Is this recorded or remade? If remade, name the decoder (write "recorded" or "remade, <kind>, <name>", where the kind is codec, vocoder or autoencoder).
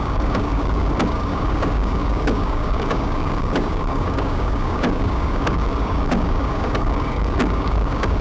remade, codec, DAC